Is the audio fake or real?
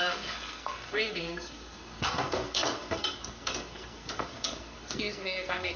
fake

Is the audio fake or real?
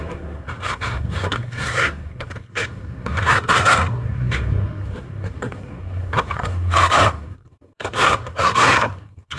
fake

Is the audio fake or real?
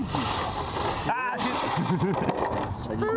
real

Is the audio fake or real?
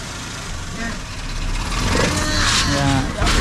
real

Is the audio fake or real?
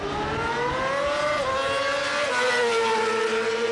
real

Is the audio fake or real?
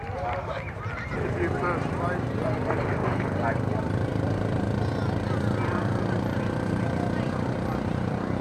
real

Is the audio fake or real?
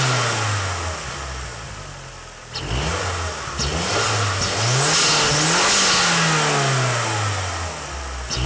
real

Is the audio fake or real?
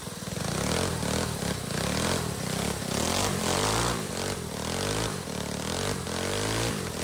real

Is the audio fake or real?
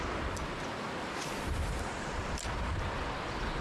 real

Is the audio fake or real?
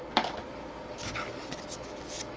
real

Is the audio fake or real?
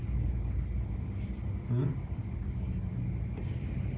real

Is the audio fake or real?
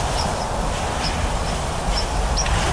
real